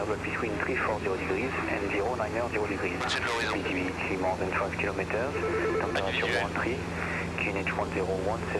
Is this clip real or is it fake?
real